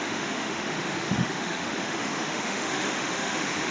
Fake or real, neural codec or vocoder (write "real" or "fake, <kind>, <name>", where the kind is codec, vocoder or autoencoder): fake, autoencoder, DAC-VAE